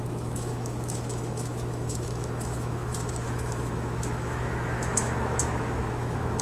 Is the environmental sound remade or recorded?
remade